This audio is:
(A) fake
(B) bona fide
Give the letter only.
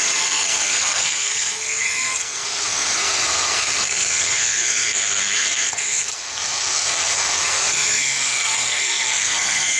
A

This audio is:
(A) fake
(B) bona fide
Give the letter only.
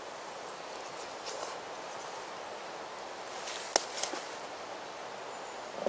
B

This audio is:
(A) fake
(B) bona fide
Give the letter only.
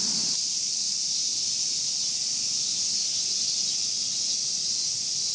B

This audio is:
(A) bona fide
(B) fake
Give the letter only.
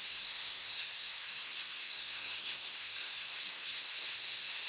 B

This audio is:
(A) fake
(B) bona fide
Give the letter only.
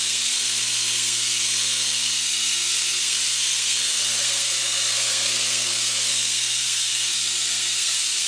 A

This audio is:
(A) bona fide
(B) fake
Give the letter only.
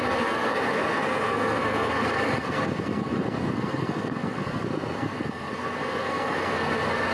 B